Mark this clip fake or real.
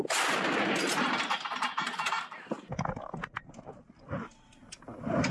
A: real